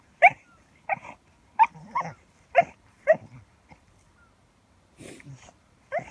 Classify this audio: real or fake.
fake